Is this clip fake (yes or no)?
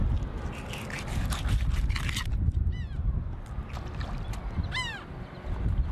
no